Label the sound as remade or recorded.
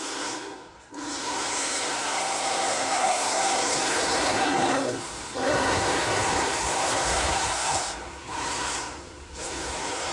remade